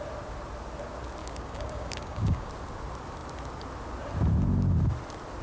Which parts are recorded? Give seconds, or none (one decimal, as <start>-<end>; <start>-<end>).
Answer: 0.0-1.2; 2.5-5.4